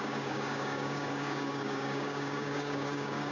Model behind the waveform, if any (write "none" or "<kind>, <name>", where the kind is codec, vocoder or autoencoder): codec, DAC